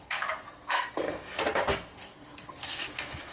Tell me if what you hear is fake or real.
fake